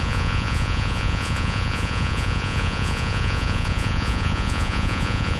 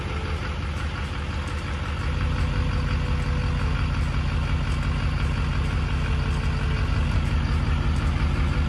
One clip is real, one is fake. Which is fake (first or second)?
first